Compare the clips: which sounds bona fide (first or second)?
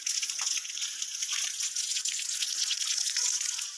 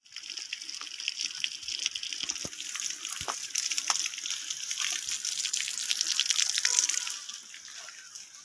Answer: second